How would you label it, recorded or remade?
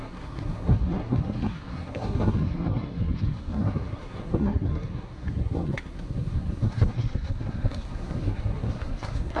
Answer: remade